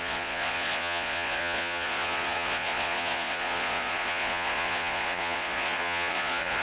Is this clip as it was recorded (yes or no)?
no